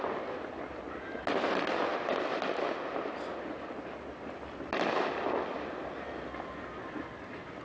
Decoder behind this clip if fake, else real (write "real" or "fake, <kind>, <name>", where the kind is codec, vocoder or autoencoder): real